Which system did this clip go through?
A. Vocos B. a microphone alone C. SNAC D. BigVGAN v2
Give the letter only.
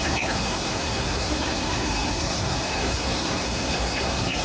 C